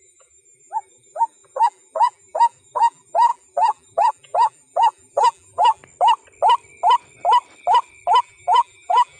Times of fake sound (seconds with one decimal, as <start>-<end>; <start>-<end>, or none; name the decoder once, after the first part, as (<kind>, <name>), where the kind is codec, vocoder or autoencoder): 0.0-5.8 (vocoder, BigVGAN v2); 8.2-9.2